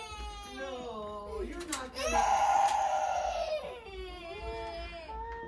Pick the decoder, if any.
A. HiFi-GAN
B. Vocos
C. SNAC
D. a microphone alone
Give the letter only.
D